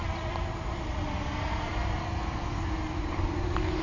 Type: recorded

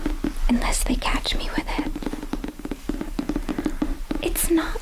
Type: remade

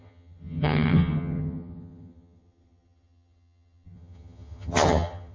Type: remade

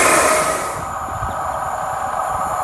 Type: recorded